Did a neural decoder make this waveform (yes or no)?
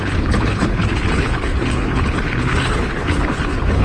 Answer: yes